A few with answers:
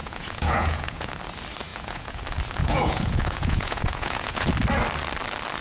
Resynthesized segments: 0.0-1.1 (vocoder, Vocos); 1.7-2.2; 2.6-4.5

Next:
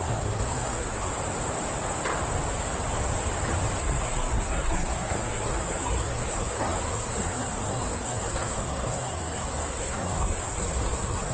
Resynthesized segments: 0.0-1.1 (codec, SNAC); 3.8-11.3

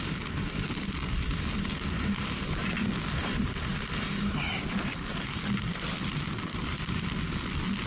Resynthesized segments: none

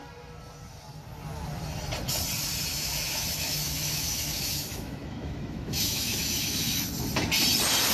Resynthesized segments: 2.7-6.9 (autoencoder, DAC-VAE)

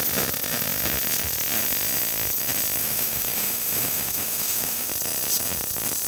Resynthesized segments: 2.8-4.9 (autoencoder, DAC-VAE)

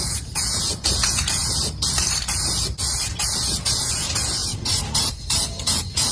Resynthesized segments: 0.0-1.4 (vocoder, Vocos); 3.5-4.4; 5.0-6.1

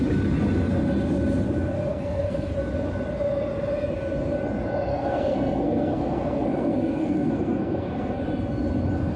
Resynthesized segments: 1.9-2.5 (codec, SNAC); 4.9-8.2